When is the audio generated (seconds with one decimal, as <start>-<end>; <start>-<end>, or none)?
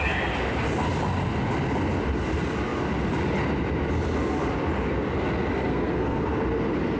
5.5-6.2